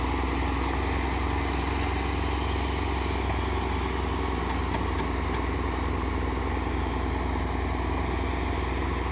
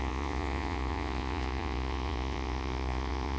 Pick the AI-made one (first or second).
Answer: second